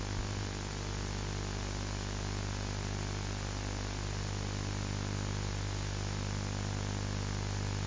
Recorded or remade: recorded